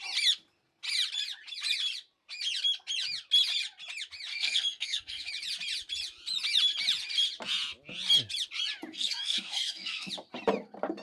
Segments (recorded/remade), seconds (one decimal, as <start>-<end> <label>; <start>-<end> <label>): 0.0-4.3 recorded; 4.3-5.3 remade; 5.3-8.9 recorded; 8.9-10.1 remade; 10.1-11.0 recorded